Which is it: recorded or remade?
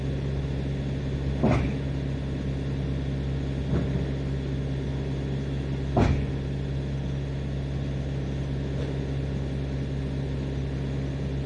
recorded